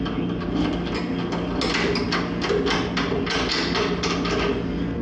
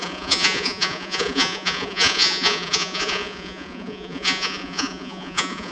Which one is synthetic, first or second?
second